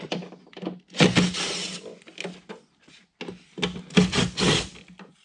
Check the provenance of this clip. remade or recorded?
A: recorded